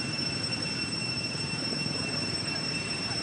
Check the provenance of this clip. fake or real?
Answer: fake